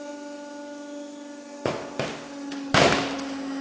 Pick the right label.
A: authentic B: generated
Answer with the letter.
A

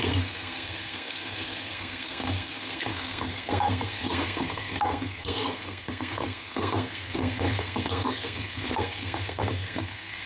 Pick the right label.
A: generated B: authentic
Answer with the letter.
A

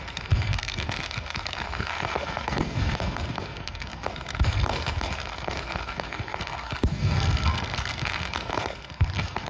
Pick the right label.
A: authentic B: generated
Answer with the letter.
B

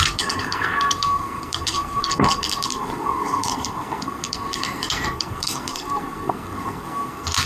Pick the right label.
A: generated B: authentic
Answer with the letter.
A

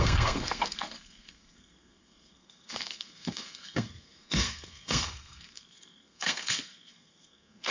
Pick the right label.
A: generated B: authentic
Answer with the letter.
A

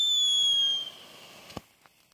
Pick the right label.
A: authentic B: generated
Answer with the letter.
A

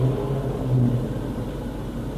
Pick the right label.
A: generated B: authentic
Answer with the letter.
B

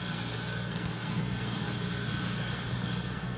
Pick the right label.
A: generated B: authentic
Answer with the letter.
A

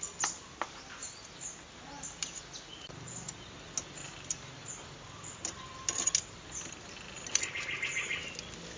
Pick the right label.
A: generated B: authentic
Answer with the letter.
B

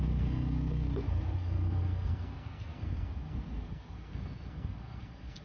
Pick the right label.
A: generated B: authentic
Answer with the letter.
A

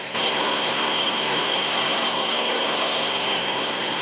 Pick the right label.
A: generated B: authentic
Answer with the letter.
A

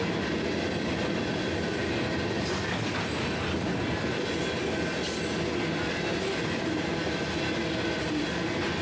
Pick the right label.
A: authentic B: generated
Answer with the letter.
A